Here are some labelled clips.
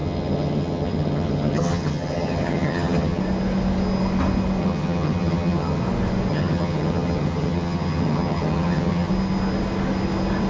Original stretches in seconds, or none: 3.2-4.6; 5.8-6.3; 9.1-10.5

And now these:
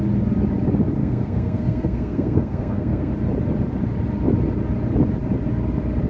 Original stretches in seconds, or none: 0.0-1.0; 3.1-6.1